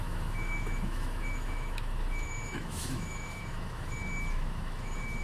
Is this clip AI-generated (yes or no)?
yes